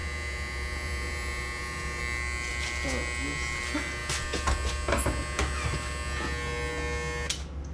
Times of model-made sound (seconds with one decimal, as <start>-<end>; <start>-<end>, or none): 0.0-2.0